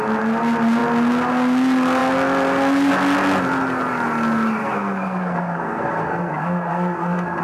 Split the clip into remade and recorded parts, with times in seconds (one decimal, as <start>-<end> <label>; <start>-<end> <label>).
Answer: 0.0-4.6 recorded; 4.6-7.4 remade